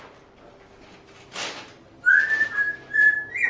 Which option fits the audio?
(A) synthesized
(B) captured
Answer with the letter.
B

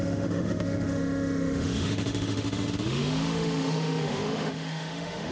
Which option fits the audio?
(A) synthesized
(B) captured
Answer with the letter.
A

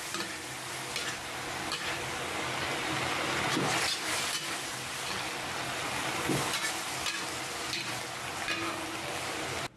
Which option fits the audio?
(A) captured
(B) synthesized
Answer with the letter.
A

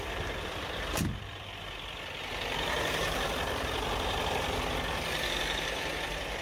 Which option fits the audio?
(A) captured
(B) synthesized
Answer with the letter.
B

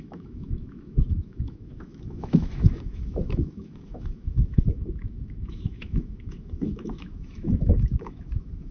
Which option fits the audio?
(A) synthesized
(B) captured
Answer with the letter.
A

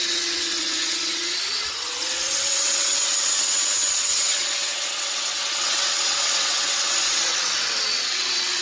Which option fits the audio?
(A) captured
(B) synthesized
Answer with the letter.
B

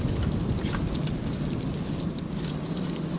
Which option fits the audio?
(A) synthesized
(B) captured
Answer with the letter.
B